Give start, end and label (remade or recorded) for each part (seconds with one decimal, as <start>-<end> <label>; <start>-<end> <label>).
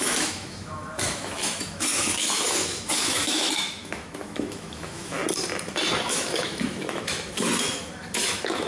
0.0-5.2 remade; 5.2-6.1 recorded; 6.1-8.7 remade